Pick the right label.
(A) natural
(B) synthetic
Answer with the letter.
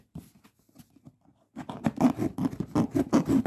A